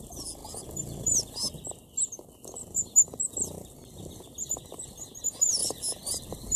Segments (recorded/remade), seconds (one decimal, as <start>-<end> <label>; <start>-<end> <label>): 0.0-6.6 recorded